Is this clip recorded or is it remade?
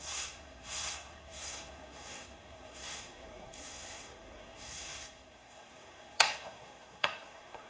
remade